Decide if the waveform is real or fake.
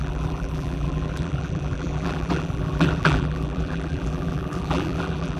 fake